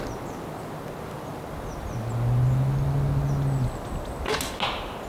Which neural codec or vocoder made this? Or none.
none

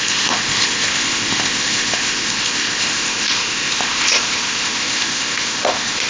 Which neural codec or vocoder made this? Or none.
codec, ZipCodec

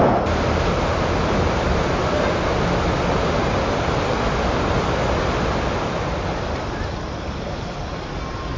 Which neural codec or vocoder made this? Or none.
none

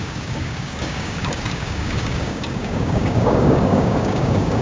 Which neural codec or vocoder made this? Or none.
codec, DAC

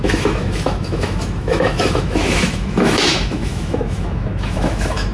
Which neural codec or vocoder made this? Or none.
autoencoder, DAC-VAE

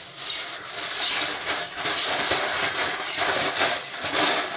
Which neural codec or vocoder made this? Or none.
none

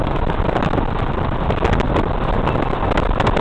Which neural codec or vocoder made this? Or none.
none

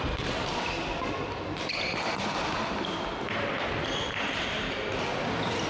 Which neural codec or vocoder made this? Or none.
none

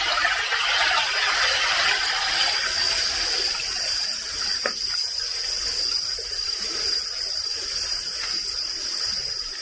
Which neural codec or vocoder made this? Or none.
none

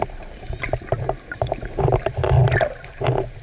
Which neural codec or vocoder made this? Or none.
none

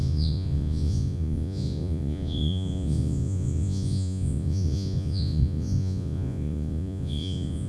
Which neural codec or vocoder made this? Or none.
vocoder, Vocos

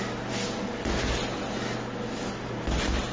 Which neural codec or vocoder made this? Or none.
none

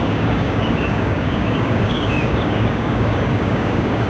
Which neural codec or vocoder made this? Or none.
codec, DAC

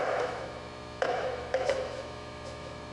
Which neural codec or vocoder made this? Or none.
autoencoder, DAC-VAE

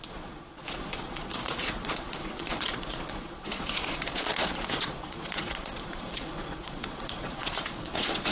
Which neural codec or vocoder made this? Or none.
vocoder, Vocos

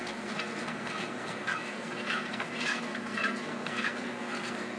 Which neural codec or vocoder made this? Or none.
codec, SNAC